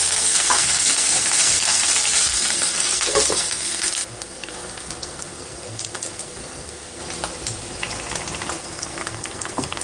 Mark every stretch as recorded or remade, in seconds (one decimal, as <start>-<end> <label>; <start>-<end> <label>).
0.0-7.0 remade; 7.0-8.6 recorded; 8.6-9.8 remade